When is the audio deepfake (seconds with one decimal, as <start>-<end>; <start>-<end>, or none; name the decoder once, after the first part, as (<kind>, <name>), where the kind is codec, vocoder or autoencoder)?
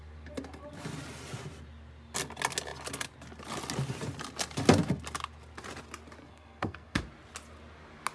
6.2-7.0 (codec, SNAC)